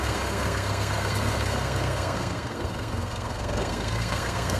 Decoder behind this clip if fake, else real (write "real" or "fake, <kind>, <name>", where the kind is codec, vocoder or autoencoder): fake, codec, SNAC